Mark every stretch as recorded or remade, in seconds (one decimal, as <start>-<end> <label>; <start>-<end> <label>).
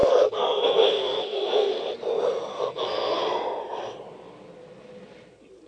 0.0-1.7 remade; 1.7-2.5 recorded; 2.5-3.2 remade; 3.2-5.7 recorded